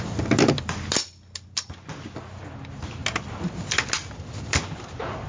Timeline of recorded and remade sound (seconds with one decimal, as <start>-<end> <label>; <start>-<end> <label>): 0.0-5.3 recorded

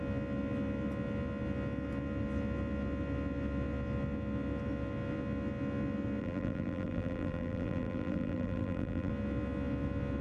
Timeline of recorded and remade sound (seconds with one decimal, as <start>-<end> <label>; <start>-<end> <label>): 0.0-6.2 recorded; 6.2-9.1 remade; 9.1-10.2 recorded

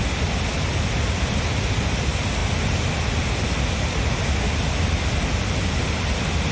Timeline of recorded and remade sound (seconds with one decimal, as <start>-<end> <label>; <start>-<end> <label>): 0.0-6.5 recorded

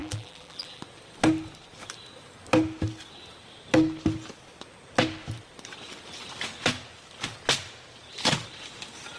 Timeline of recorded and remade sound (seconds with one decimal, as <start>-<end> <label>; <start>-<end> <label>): 0.0-0.8 remade; 0.8-9.2 recorded

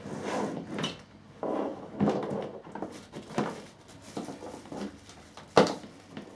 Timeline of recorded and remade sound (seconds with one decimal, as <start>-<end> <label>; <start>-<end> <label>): 0.0-6.4 recorded